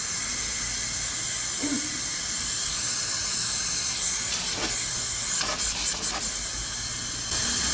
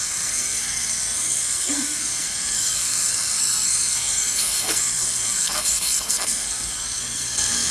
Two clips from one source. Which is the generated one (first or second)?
second